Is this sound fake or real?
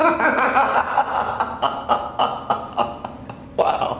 real